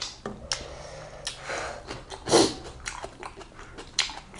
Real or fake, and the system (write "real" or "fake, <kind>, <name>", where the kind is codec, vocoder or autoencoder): real